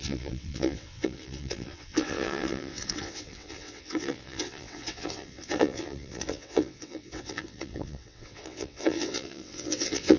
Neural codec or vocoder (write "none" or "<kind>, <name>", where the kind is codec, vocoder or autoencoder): vocoder, WaveNeXt